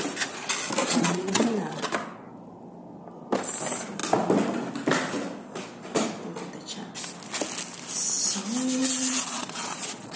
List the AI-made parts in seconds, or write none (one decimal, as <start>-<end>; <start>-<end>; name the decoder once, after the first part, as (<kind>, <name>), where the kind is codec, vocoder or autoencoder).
0.8-1.9 (vocoder, Vocos); 8.8-10.2